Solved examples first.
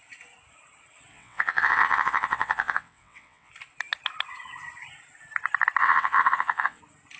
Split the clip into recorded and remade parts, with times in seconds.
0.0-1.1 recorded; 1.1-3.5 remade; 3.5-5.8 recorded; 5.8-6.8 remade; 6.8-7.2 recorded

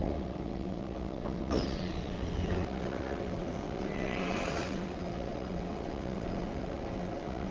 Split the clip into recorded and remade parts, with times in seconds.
0.0-7.5 remade